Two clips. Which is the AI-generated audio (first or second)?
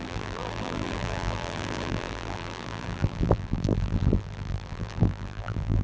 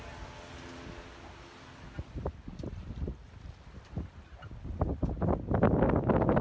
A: first